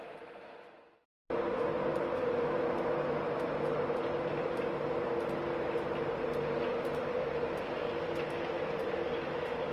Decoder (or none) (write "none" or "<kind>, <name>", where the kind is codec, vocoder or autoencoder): none